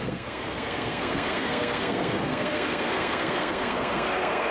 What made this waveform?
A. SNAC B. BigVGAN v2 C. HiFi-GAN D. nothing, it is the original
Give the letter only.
A